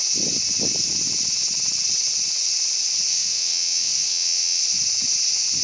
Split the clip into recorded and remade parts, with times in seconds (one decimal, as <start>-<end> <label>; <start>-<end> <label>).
0.0-3.1 recorded; 3.1-4.6 remade; 4.6-5.6 recorded